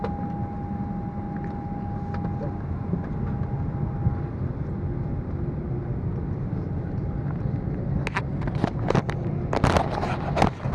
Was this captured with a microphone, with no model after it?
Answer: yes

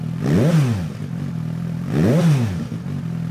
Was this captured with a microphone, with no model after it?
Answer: yes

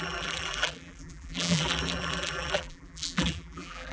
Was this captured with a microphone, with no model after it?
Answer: no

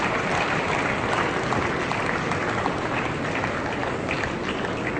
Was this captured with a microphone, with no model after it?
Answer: yes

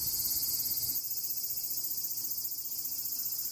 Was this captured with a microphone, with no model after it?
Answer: yes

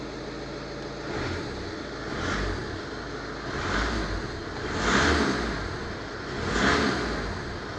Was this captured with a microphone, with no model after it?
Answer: yes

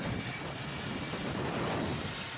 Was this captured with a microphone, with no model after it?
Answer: no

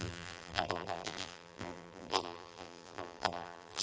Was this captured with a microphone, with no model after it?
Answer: no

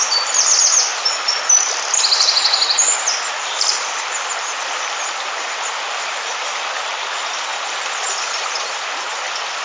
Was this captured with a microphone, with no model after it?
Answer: yes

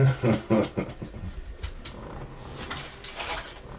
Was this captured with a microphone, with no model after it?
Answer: no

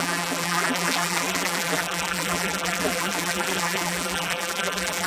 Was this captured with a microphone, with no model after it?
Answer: no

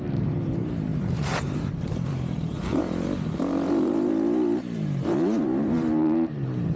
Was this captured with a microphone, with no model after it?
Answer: no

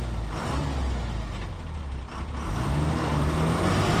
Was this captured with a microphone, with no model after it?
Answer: yes